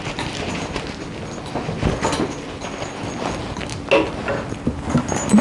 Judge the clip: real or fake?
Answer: real